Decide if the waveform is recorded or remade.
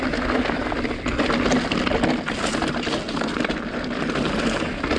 recorded